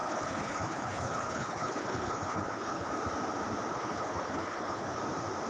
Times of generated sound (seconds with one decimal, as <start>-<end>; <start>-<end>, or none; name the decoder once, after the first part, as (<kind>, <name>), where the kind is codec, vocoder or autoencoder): 0.0-2.9 (codec, HILCodec); 3.7-5.0